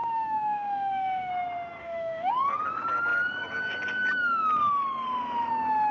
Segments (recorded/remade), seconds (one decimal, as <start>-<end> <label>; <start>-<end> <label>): 0.0-1.3 remade; 1.3-1.8 recorded; 1.8-2.3 remade; 2.3-5.9 recorded